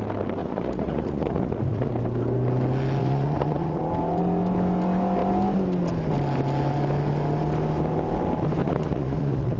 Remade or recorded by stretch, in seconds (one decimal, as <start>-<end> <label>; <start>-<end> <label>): 0.0-0.4 recorded; 0.4-1.9 remade; 1.9-3.0 recorded; 3.0-3.8 remade; 3.8-8.6 recorded; 8.6-9.6 remade